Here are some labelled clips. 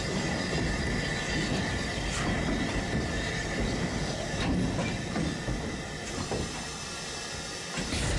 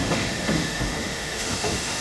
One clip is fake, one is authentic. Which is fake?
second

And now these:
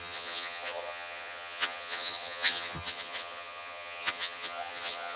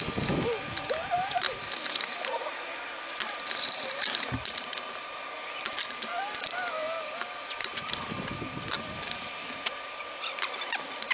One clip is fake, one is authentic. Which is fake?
first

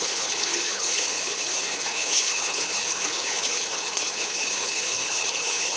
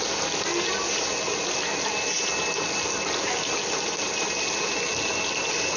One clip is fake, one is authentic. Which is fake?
first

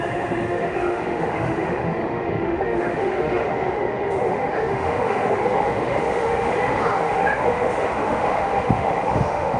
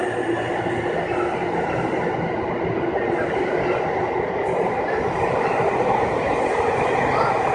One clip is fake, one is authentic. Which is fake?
first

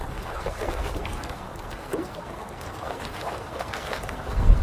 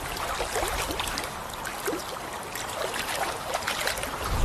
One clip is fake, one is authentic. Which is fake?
first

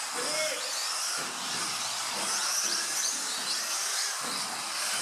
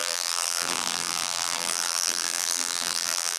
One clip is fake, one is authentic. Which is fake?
second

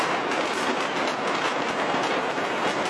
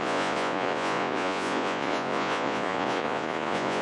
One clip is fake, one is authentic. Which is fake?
second